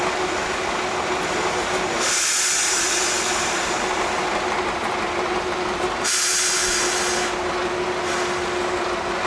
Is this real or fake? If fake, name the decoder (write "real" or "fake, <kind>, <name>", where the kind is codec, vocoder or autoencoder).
real